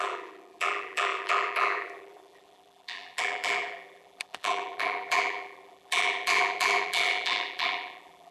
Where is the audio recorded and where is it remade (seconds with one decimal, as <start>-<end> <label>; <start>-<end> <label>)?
0.0-8.3 remade